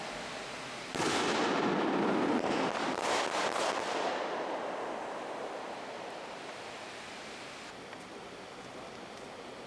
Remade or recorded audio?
recorded